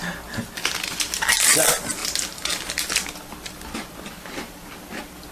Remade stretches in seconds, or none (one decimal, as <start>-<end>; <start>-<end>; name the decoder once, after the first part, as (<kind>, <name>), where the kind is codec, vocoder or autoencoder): none